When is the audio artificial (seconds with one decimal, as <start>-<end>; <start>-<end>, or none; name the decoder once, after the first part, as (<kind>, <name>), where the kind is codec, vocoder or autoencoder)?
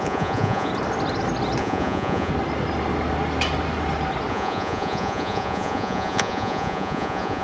0.0-0.7 (vocoder, Vocos); 1.6-2.3; 4.3-7.4